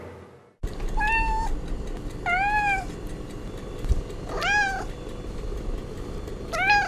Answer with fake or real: real